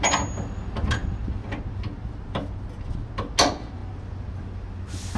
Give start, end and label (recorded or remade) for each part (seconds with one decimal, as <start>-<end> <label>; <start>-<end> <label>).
0.0-5.2 recorded